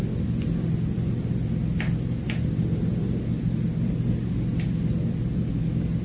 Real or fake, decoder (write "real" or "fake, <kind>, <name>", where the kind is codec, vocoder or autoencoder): real